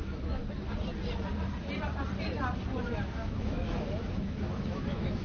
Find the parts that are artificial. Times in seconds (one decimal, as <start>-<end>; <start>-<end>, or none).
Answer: 0.0-0.4; 2.8-5.2